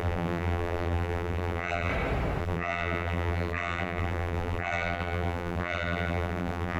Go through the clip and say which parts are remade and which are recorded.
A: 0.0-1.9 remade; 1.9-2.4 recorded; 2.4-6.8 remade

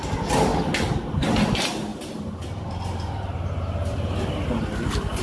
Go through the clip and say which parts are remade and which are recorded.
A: 0.0-1.9 recorded; 1.9-5.2 remade

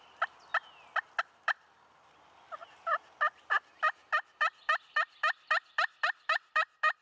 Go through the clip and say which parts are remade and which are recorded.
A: 0.0-0.5 remade; 0.5-1.2 recorded; 1.2-2.6 remade; 2.6-3.4 recorded; 3.4-7.0 remade

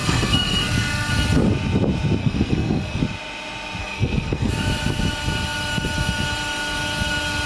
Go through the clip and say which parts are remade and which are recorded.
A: 0.0-1.1 remade; 1.1-2.2 recorded; 2.2-3.0 remade; 3.0-3.8 recorded; 3.8-4.5 remade; 4.5-7.5 recorded